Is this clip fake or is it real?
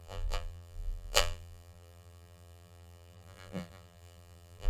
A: fake